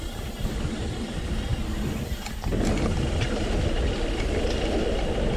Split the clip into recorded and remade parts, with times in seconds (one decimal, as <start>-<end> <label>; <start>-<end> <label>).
0.0-5.4 recorded